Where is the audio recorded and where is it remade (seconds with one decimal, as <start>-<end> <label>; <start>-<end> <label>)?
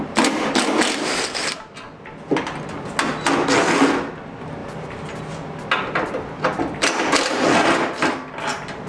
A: 0.0-8.9 recorded